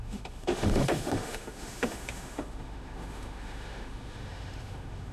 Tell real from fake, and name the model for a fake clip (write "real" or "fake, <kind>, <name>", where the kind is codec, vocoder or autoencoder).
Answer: fake, autoencoder, DAC-VAE